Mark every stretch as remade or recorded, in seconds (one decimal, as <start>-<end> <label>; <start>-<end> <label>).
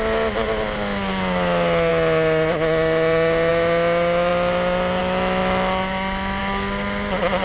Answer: 0.0-7.4 recorded